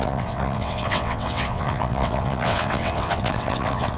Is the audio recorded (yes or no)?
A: no